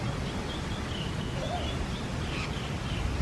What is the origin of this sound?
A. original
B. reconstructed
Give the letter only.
A